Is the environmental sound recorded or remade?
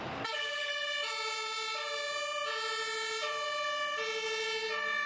recorded